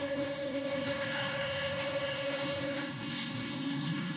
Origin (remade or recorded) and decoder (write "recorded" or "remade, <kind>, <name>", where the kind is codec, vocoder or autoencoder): remade, codec, SNAC